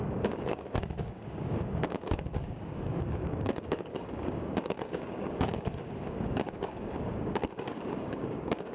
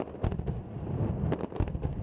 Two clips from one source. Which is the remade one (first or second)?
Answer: first